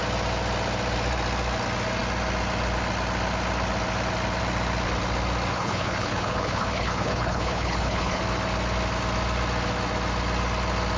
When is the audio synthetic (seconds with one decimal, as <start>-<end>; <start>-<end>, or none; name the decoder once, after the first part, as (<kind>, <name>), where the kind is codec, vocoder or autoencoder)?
5.5-8.2 (codec, HILCodec)